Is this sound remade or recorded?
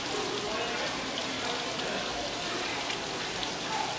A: recorded